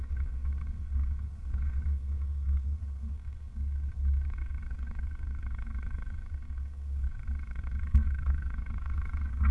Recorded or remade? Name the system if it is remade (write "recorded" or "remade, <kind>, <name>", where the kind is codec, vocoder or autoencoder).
remade, codec, SNAC